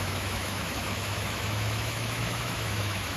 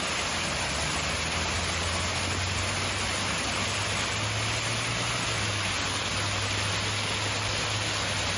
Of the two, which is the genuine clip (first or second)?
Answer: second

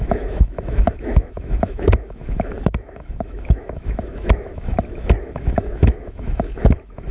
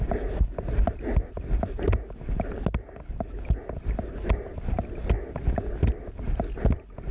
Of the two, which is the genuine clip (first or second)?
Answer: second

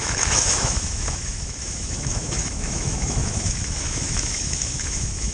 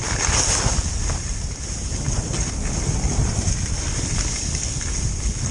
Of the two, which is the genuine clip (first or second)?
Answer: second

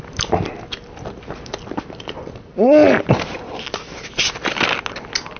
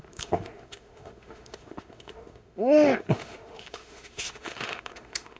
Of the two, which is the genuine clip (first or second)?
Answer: first